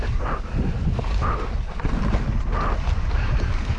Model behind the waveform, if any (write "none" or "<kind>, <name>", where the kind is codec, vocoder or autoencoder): none